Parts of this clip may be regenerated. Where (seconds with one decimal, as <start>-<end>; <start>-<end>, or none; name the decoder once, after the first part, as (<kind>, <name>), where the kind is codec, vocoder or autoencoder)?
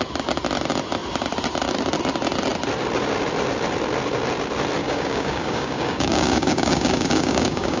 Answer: 4.8-7.8 (codec, DAC)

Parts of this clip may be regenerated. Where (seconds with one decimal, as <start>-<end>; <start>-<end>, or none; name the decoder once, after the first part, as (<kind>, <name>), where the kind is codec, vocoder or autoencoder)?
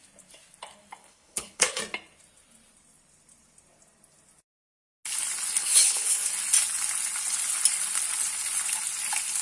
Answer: 1.0-1.8 (codec, HILCodec); 5.6-6.3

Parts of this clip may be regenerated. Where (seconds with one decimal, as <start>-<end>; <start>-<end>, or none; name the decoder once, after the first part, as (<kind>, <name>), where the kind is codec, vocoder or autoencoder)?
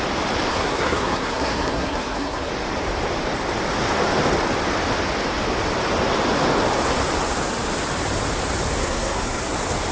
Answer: 0.5-2.5 (codec, SNAC); 8.8-9.4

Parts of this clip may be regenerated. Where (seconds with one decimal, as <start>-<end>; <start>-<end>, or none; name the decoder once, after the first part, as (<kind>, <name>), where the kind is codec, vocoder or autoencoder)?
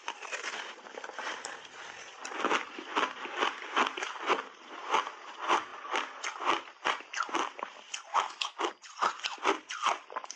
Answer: 8.1-8.7 (autoencoder, DAC-VAE)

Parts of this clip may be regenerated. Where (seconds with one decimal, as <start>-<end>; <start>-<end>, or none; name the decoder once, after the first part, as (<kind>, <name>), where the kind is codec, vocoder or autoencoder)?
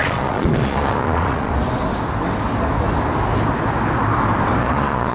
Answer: 0.0-1.5 (vocoder, Vocos); 4.6-5.1